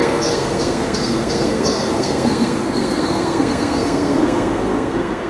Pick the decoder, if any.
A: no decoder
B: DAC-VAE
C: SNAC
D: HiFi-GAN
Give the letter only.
C